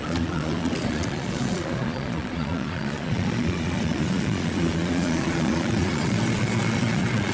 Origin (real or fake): fake